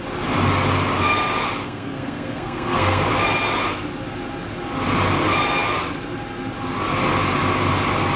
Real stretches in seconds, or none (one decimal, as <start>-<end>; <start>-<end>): 0.0-1.6; 3.0-8.2